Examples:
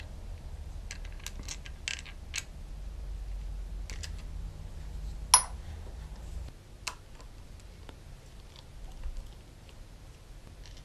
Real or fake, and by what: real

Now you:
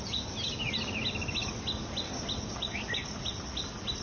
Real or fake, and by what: real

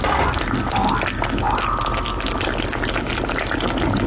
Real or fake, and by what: real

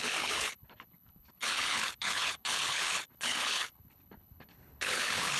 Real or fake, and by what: fake, codec, HILCodec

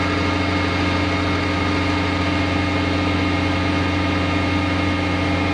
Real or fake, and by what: real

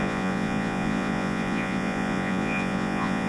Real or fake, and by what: fake, vocoder, Vocos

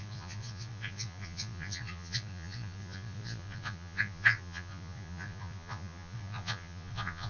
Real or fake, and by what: fake, vocoder, Vocos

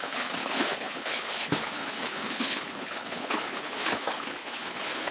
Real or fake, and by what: fake, codec, HILCodec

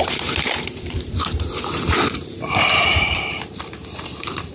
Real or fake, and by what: fake, vocoder, BigVGAN v2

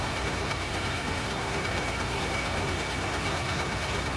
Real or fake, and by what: fake, codec, SNAC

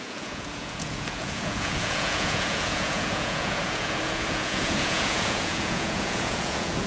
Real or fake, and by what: fake, vocoder, Vocos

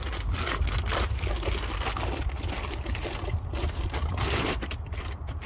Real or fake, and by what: real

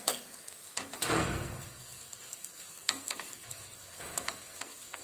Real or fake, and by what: fake, codec, SNAC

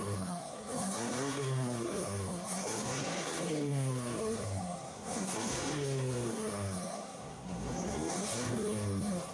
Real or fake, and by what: fake, codec, SNAC